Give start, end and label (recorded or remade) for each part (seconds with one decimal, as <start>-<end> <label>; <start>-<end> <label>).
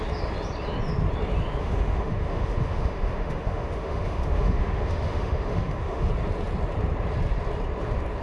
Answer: 0.0-1.6 recorded; 1.6-6.1 remade; 6.1-8.2 recorded